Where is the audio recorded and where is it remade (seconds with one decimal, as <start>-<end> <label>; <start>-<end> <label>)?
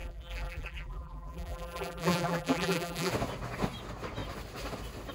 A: 0.0-3.1 remade; 3.1-5.1 recorded